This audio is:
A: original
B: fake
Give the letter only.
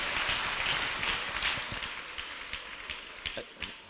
A